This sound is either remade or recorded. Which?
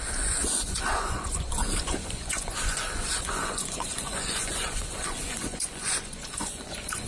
remade